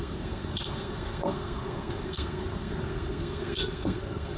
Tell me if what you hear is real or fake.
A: fake